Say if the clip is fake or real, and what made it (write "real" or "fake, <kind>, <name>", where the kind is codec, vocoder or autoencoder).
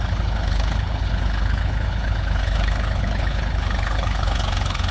fake, codec, HILCodec